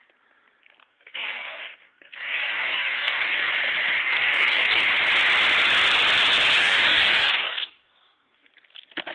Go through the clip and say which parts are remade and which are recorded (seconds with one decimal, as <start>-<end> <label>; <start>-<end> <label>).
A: 0.0-0.8 recorded; 0.8-3.5 remade; 3.5-4.0 recorded; 4.0-4.8 remade; 4.8-6.6 recorded; 6.6-8.5 remade; 8.5-9.1 recorded